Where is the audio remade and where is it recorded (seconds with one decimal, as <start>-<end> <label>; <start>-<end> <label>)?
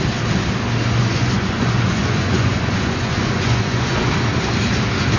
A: 0.0-1.0 recorded; 1.0-4.1 remade; 4.1-5.2 recorded